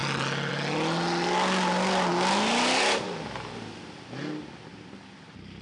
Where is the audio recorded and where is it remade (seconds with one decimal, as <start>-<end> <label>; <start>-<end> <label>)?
0.0-5.6 recorded